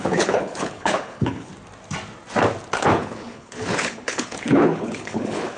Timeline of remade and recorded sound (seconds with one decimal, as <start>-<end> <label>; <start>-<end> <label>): 0.0-1.5 remade; 1.5-2.7 recorded; 2.7-5.6 remade